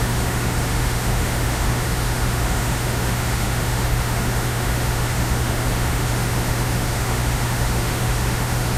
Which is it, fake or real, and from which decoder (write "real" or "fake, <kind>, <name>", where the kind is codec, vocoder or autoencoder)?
fake, autoencoder, DAC-VAE